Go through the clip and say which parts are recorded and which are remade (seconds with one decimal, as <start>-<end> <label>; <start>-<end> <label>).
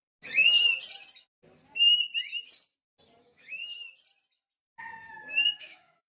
0.0-3.2 recorded; 3.2-3.6 remade; 3.6-5.5 recorded; 5.5-6.1 remade